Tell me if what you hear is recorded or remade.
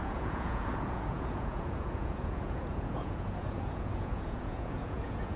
remade